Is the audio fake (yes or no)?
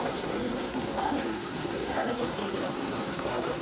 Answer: yes